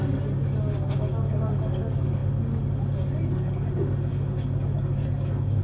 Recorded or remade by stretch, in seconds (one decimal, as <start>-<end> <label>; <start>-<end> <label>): 0.0-5.6 recorded